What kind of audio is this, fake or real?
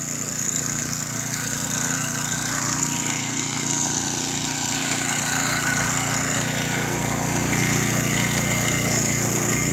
fake